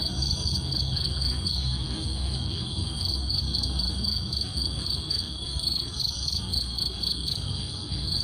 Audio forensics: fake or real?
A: fake